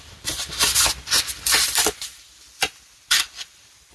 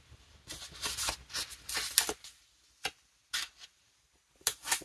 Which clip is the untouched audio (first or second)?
second